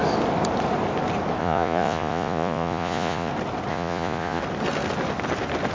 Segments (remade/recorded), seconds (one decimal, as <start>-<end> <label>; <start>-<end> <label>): 0.0-1.4 recorded; 1.4-3.3 remade; 3.3-3.7 recorded; 3.7-4.4 remade; 4.4-5.7 recorded